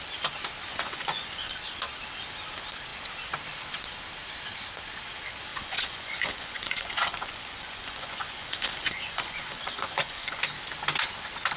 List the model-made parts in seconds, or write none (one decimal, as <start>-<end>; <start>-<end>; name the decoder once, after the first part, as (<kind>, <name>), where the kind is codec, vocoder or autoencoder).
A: 0.7-1.5 (vocoder, Vocos); 5.5-10.4